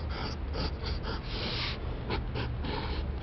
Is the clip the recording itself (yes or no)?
yes